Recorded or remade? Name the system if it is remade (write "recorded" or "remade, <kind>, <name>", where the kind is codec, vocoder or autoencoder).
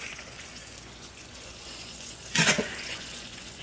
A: remade, vocoder, Vocos